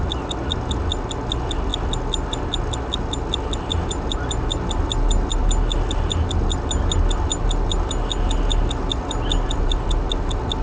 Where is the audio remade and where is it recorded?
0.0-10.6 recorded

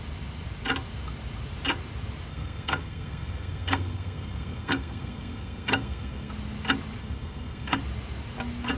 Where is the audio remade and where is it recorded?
0.0-2.3 recorded; 2.3-6.3 remade; 6.3-7.0 recorded; 7.0-7.8 remade; 7.8-8.8 recorded

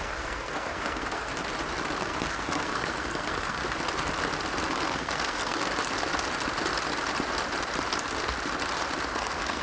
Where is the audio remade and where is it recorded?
0.0-1.3 remade; 1.3-2.0 recorded; 2.0-3.6 remade; 3.6-4.7 recorded; 4.7-5.7 remade; 5.7-9.1 recorded; 9.1-9.6 remade